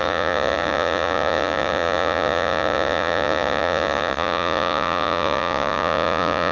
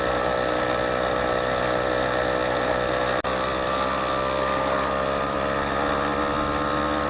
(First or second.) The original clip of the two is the second